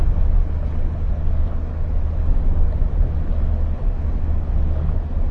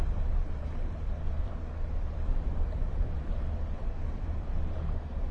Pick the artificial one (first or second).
second